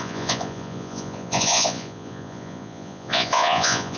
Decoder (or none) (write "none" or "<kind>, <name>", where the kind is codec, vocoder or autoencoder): vocoder, Vocos